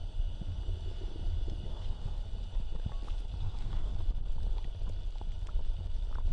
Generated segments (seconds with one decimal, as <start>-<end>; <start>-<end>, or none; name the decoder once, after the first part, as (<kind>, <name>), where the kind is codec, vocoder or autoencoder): 1.7-2.2 (codec, SNAC); 3.4-3.9